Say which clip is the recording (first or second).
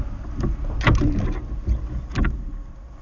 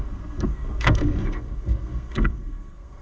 first